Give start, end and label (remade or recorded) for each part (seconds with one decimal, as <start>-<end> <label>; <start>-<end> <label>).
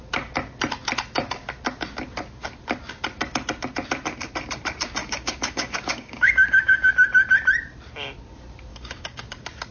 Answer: 0.0-5.0 recorded; 5.0-6.9 remade; 6.9-8.7 recorded; 8.7-9.2 remade; 9.2-9.7 recorded